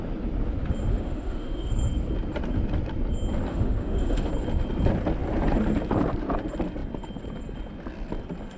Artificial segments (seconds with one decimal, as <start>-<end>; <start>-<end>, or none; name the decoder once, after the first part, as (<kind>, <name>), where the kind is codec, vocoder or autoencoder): 0.9-1.7 (autoencoder, DAC-VAE); 3.5-4.3